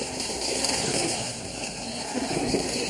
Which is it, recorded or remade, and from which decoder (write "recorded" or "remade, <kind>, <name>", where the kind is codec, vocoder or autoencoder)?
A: remade, codec, SNAC